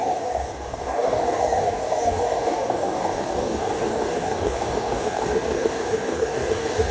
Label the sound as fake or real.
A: fake